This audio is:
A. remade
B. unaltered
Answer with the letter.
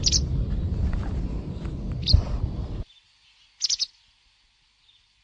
B